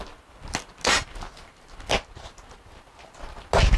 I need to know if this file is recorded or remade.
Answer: recorded